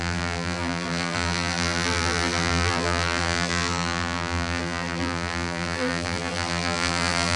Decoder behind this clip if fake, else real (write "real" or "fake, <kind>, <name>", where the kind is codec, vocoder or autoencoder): fake, vocoder, BigVGAN v2